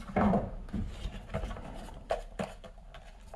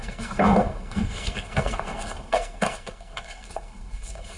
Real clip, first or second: first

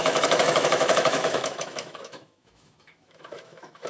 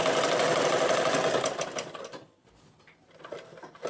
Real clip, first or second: second